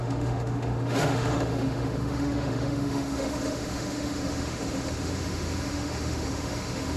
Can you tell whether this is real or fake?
fake